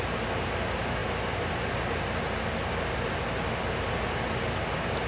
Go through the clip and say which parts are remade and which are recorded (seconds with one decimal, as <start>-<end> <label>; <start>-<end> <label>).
0.0-5.1 recorded